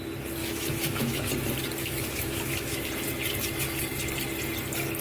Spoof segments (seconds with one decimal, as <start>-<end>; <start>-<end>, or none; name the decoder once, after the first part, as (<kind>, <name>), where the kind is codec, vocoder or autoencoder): 0.4-1.3 (autoencoder, DAC-VAE); 1.8-2.9